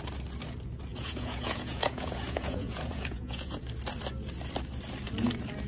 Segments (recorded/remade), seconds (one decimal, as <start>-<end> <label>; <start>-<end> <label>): 0.0-0.9 recorded; 0.9-3.6 remade; 3.6-5.7 recorded

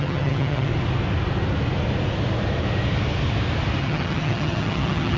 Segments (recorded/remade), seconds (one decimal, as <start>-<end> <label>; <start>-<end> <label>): 0.0-0.7 remade; 0.7-3.8 recorded; 3.8-5.2 remade

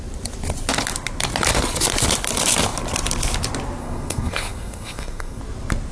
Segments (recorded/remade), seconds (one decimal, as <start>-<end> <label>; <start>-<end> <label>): 0.0-3.8 recorded; 3.8-5.4 remade; 5.4-5.9 recorded

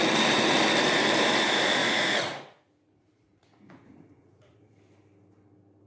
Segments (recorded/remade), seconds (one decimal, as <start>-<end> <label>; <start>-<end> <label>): 0.0-1.8 recorded; 1.8-4.8 remade; 4.8-5.9 recorded

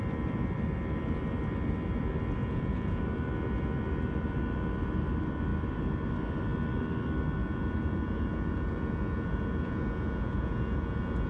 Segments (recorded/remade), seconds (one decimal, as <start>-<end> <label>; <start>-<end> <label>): 0.0-2.4 recorded; 2.4-3.0 remade; 3.0-7.4 recorded; 7.4-11.3 remade

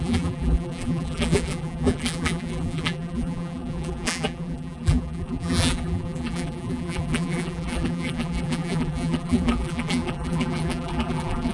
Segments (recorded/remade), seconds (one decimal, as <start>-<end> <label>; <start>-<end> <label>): 0.0-11.5 remade

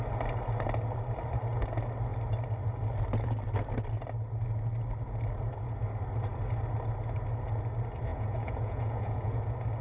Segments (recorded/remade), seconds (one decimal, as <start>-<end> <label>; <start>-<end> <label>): 0.0-8.1 recorded; 8.1-9.4 remade; 9.4-9.8 recorded